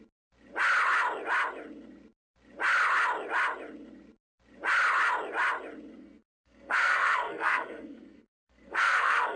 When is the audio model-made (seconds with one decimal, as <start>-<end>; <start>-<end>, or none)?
5.9-9.4